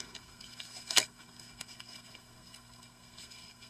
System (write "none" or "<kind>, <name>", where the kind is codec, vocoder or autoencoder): codec, SNAC